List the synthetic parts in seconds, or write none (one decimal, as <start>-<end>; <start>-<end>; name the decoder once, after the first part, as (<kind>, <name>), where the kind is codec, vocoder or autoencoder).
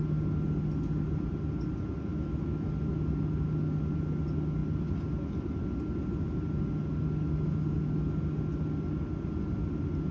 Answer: 2.1-2.7 (autoencoder, DAC-VAE)